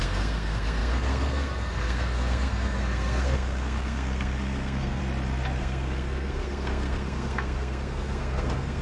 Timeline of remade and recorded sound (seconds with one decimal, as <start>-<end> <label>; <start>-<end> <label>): 0.0-5.0 remade; 5.0-5.6 recorded; 5.6-8.8 remade